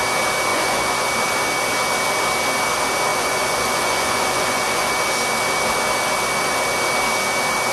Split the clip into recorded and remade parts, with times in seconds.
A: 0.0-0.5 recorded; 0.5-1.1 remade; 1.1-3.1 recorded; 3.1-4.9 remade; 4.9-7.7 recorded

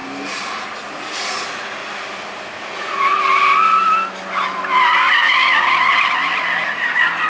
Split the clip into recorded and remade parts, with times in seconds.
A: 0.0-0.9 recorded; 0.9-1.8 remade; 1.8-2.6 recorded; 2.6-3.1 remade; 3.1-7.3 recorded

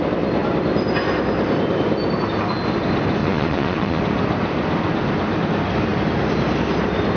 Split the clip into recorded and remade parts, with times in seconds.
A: 0.0-3.2 recorded; 3.2-4.0 remade; 4.0-7.2 recorded

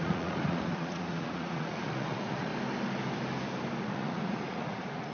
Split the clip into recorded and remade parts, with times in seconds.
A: 0.0-2.5 remade; 2.5-3.8 recorded; 3.8-5.1 remade

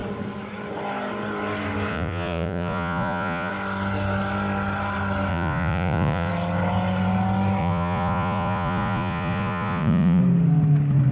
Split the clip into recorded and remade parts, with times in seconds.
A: 0.0-1.9 recorded; 1.9-3.5 remade; 3.5-5.3 recorded; 5.3-6.3 remade; 6.3-7.6 recorded; 7.6-10.2 remade; 10.2-11.1 recorded

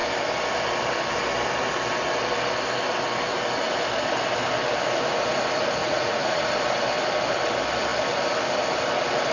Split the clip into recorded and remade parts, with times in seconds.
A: 0.0-5.8 recorded; 5.8-6.5 remade; 6.5-9.3 recorded

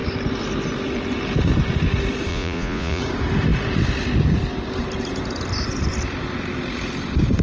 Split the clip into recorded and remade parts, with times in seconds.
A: 0.0-2.3 recorded; 2.3-3.0 remade; 3.0-7.4 recorded